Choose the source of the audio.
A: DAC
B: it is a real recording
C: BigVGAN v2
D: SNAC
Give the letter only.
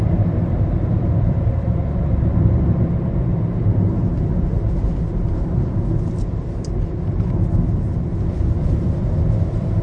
C